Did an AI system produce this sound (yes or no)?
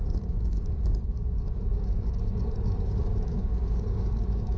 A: yes